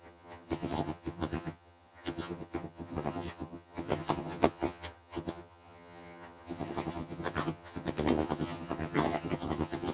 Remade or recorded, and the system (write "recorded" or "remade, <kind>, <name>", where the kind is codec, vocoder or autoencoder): remade, vocoder, HiFi-GAN